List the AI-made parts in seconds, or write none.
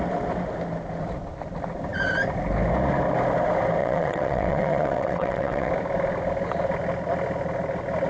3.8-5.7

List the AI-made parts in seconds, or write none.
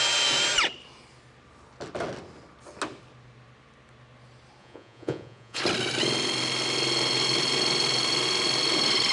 4.6-5.6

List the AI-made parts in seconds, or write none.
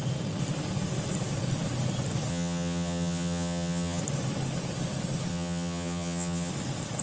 2.3-4.0; 5.3-6.5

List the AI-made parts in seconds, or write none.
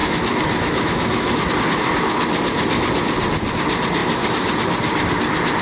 0.0-1.5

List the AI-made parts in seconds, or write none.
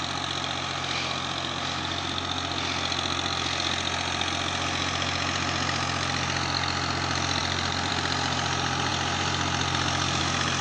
7.4-7.9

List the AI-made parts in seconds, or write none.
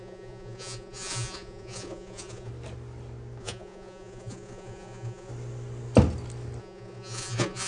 0.0-2.5; 3.4-5.3; 6.6-7.7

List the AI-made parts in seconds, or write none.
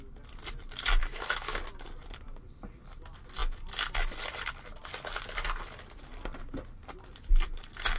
1.0-1.6